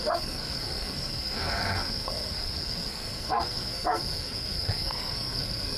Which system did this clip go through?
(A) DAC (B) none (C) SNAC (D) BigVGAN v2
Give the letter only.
C